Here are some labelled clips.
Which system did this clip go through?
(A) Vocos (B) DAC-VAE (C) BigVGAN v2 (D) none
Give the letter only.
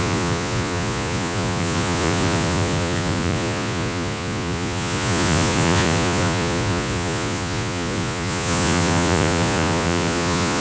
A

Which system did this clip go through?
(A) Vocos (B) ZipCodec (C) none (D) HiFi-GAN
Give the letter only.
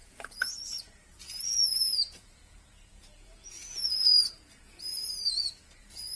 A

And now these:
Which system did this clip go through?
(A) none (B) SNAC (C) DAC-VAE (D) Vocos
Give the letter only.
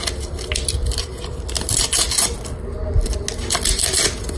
A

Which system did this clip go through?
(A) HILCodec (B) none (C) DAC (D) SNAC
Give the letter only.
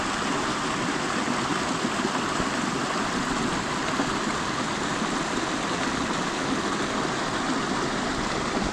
B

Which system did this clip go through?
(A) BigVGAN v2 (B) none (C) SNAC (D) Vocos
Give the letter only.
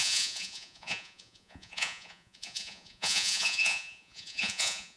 D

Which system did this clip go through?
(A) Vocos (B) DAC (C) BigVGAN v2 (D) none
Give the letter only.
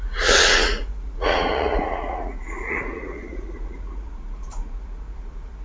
A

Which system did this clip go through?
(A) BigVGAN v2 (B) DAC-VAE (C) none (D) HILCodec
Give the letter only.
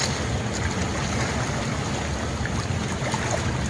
C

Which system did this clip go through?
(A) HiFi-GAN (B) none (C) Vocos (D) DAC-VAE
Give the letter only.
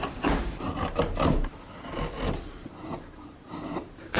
B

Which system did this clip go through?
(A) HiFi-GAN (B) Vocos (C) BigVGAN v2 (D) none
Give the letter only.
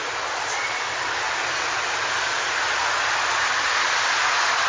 D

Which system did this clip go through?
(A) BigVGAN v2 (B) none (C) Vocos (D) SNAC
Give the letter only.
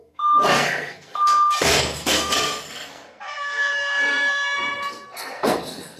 D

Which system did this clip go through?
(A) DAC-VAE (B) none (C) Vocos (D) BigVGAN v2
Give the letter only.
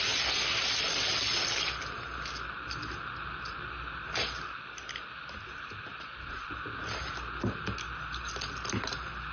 B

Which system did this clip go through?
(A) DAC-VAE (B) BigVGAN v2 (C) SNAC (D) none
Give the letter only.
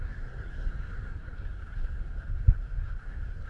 C